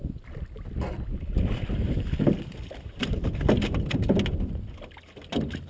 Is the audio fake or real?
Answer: real